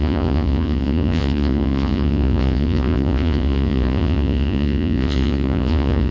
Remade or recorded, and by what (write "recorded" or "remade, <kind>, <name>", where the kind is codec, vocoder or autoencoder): remade, vocoder, Vocos